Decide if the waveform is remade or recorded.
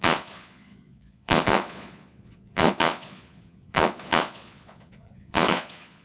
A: remade